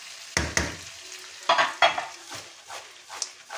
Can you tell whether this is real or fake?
real